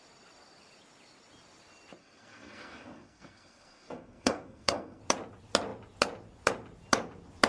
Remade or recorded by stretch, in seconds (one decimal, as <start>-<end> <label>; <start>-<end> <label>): 0.0-2.0 recorded; 2.0-5.0 remade; 5.0-7.5 recorded